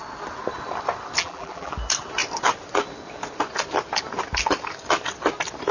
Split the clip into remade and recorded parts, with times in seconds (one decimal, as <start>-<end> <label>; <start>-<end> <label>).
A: 0.0-1.2 recorded; 1.2-1.7 remade; 1.7-5.7 recorded